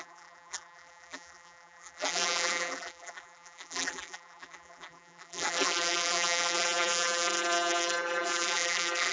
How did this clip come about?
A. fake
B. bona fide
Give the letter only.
A